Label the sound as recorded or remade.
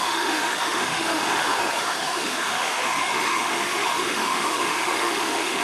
remade